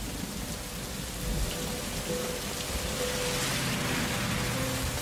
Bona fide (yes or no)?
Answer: yes